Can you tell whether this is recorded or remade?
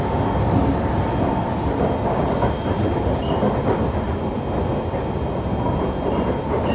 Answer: recorded